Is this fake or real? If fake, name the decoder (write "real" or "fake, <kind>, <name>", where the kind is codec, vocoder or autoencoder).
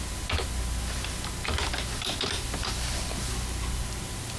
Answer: real